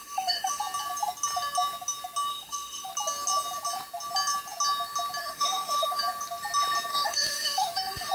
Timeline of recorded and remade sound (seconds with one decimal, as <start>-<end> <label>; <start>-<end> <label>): 0.0-0.6 remade; 0.6-2.3 recorded; 2.3-2.9 remade; 2.9-5.2 recorded; 5.2-6.0 remade; 6.0-6.9 recorded; 6.9-8.1 remade